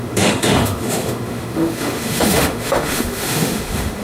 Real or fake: fake